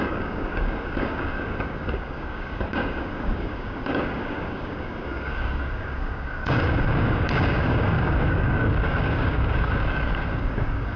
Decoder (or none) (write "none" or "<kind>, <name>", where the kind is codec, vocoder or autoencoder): codec, DAC